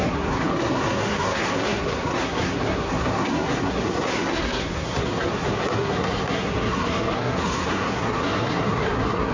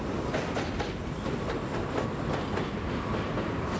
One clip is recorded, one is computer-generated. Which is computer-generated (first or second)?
first